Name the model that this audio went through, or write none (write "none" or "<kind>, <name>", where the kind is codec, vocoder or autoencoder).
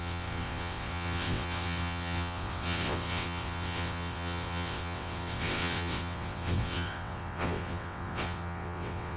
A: vocoder, WaveNeXt